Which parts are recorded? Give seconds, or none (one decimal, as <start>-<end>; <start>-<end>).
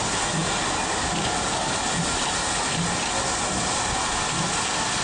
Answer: 0.0-5.0